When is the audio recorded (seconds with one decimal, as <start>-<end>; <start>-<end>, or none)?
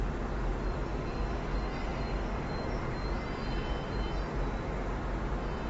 0.0-5.7